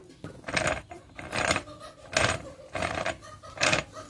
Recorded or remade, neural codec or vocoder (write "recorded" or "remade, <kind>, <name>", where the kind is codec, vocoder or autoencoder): recorded